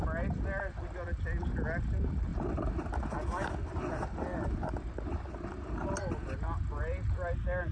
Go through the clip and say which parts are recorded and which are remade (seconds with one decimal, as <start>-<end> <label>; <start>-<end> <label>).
0.0-7.7 recorded